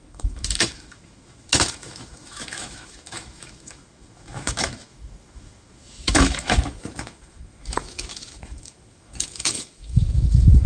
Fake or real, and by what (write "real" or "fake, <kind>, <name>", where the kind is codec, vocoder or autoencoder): fake, autoencoder, DAC-VAE